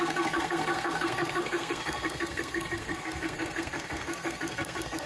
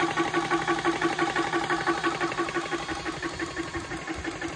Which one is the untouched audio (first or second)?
second